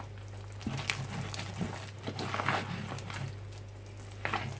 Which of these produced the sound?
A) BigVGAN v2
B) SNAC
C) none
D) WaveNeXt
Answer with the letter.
C